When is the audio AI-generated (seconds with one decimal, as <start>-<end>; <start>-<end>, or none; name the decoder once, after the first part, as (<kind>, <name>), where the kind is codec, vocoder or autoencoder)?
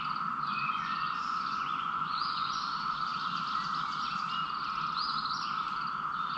0.5-2.6 (vocoder, Vocos)